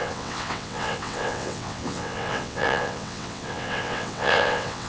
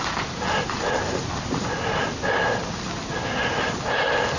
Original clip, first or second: second